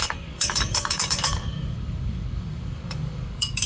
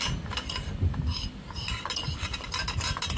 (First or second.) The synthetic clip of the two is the first